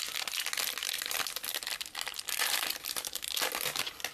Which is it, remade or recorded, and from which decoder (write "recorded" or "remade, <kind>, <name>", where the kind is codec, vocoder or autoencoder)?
recorded